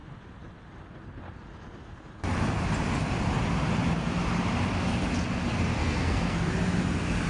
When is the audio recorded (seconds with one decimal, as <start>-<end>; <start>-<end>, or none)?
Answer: 0.0-5.8; 6.4-7.3